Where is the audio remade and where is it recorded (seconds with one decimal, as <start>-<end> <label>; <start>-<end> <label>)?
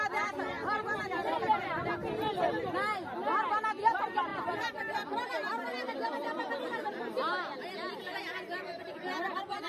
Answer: 0.0-4.3 recorded; 4.3-5.1 remade; 5.1-8.7 recorded; 8.7-9.7 remade